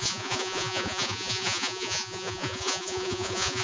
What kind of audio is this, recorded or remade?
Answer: remade